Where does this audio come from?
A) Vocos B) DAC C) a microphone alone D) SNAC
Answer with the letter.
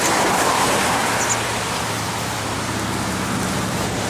C